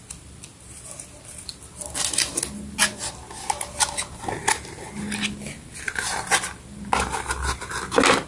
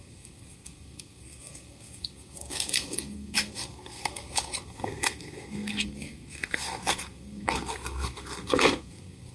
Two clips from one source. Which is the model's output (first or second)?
second